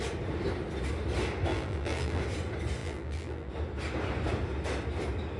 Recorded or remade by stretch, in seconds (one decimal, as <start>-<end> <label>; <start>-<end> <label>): 0.0-1.5 recorded; 1.5-2.2 remade; 2.2-2.8 recorded; 2.8-3.5 remade; 3.5-5.4 recorded